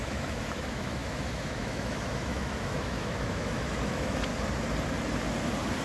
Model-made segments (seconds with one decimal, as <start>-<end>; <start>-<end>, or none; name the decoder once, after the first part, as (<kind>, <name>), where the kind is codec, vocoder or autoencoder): 0.0-4.3 (autoencoder, DAC-VAE)